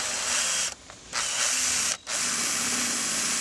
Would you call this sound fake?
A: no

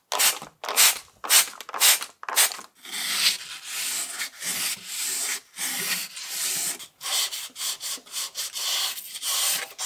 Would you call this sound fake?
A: no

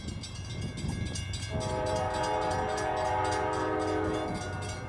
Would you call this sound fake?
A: no